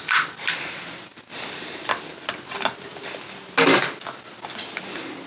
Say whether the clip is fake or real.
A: real